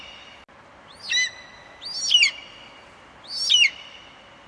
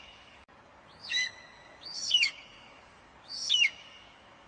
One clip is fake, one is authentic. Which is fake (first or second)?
second